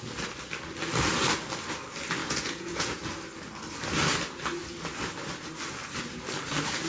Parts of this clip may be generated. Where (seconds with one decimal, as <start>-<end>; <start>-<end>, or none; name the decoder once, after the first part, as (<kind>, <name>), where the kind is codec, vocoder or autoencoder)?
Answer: 2.2-3.0 (vocoder, Vocos)

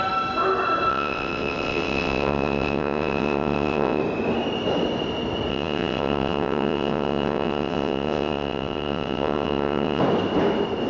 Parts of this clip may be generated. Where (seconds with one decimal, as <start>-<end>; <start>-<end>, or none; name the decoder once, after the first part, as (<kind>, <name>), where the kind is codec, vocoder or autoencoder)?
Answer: 0.9-4.0 (vocoder, WaveNeXt); 5.5-10.0

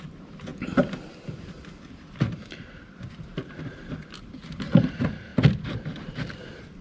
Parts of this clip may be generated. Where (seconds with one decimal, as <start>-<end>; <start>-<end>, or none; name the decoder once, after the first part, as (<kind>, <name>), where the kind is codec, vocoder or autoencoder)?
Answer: 0.5-4.6 (vocoder, BigVGAN v2)

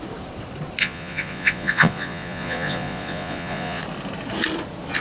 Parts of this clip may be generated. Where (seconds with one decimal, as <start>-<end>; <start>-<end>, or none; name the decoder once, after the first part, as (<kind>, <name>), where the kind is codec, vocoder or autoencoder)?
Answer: 0.8-3.8 (vocoder, Vocos)

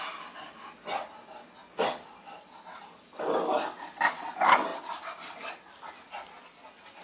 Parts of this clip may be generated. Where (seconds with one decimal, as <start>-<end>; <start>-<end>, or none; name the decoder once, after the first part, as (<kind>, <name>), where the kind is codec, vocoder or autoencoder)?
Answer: none

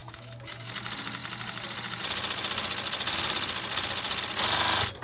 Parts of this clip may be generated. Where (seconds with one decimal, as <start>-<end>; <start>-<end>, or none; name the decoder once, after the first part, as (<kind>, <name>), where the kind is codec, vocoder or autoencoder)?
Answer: 0.0-0.7 (autoencoder, DAC-VAE)

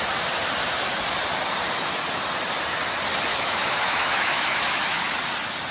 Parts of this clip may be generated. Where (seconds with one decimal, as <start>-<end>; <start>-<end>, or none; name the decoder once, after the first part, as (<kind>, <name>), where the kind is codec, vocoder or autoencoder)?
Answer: 3.3-5.1 (autoencoder, DAC-VAE)